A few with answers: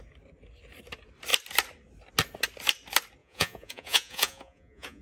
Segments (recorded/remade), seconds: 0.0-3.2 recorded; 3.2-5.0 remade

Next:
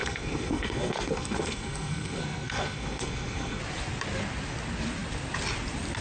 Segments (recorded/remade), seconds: 0.0-3.6 remade; 3.6-6.0 recorded

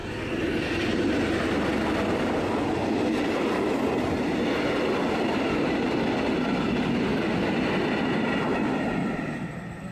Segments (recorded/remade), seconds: 0.0-9.9 recorded

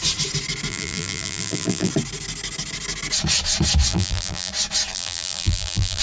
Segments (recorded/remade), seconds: 0.0-0.7 recorded; 0.7-1.9 remade; 1.9-3.9 recorded; 3.9-4.5 remade; 4.5-4.9 recorded; 4.9-6.0 remade